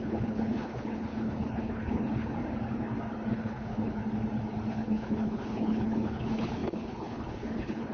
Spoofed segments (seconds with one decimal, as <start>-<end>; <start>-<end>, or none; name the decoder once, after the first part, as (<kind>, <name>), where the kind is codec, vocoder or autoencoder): 0.0-2.4 (codec, HILCodec); 3.3-4.0; 4.7-7.9